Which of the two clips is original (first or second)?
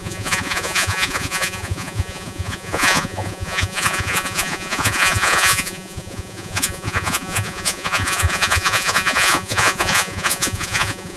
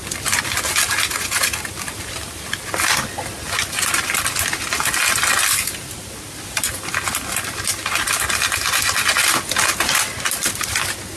second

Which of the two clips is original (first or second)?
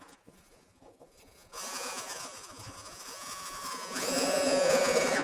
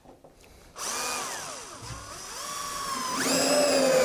second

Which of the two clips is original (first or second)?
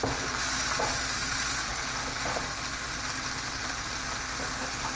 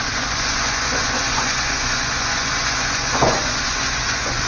first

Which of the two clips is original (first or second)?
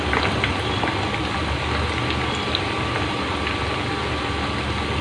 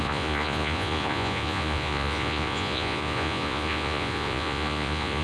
first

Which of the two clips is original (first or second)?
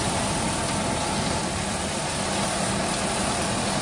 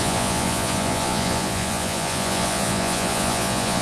first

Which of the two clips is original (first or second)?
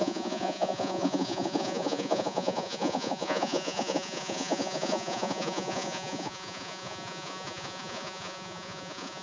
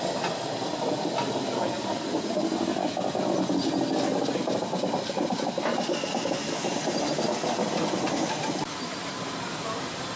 second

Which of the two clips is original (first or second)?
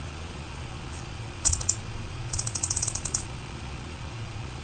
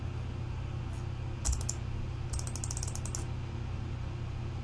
second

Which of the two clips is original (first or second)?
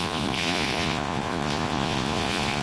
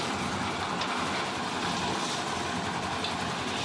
second